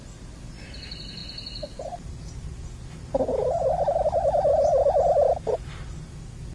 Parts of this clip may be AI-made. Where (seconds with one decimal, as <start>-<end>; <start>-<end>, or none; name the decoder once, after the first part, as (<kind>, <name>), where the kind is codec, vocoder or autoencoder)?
none